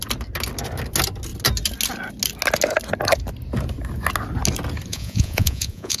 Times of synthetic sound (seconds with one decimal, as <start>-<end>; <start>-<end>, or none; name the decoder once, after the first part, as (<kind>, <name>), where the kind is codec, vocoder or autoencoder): 4.9-6.0 (vocoder, Vocos)